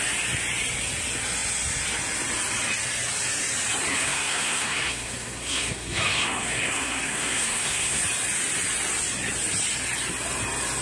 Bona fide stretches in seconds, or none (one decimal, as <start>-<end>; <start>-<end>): 0.0-3.9; 8.0-10.8